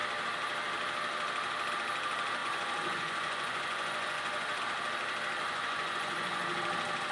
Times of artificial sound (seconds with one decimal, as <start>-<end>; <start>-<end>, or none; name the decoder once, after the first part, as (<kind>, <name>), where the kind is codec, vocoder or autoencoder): 2.4-4.6 (vocoder, Vocos); 5.4-6.4